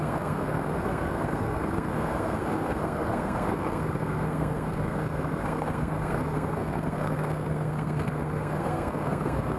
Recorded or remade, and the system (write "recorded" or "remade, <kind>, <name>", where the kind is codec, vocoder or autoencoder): remade, codec, SNAC